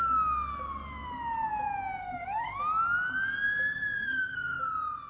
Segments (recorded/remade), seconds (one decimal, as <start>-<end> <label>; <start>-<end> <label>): 0.0-2.0 recorded; 2.0-2.6 remade; 2.6-4.0 recorded; 4.0-4.6 remade; 4.6-5.1 recorded